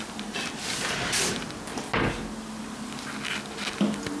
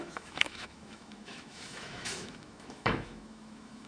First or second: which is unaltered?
first